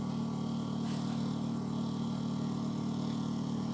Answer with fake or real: real